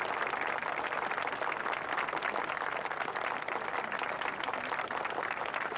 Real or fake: real